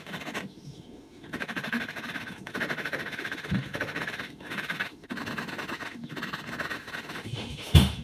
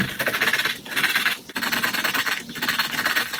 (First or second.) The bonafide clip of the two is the second